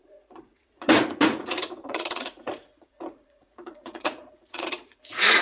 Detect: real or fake fake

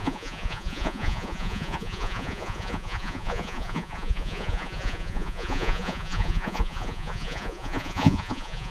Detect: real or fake fake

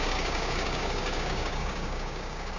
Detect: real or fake fake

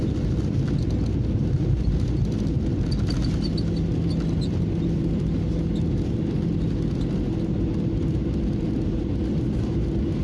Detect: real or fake real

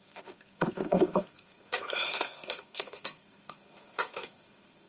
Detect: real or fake fake